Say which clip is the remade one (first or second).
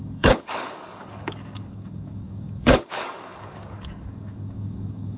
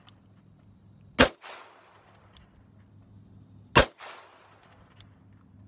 first